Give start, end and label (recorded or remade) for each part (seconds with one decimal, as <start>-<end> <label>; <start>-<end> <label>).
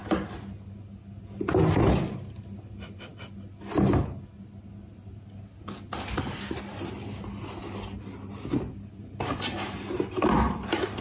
0.0-11.0 recorded